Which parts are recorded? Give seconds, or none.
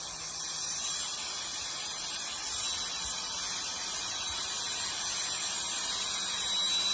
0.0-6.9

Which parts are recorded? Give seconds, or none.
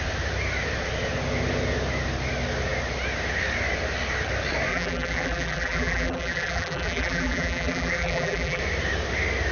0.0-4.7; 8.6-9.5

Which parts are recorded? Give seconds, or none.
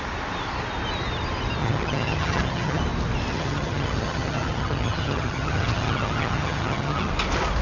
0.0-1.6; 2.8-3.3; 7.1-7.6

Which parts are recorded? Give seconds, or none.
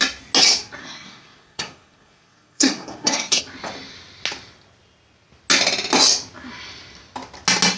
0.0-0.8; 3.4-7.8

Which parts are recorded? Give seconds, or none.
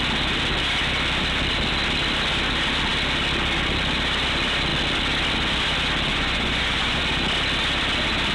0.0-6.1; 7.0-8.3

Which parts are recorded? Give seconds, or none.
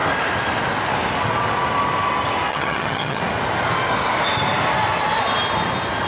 0.0-2.5; 3.2-6.1